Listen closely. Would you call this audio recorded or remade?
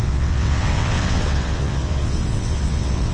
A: remade